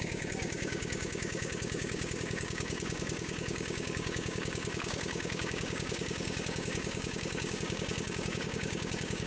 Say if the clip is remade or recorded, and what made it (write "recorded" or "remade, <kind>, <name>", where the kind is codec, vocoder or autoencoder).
remade, codec, DAC